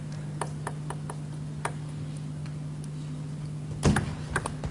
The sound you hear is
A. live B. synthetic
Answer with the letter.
A